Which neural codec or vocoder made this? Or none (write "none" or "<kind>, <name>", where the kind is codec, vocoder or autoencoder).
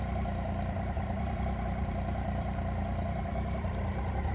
vocoder, BigVGAN v2